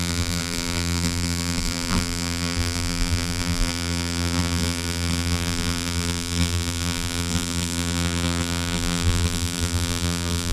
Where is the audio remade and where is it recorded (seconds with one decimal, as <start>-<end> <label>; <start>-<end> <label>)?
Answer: 0.0-10.5 remade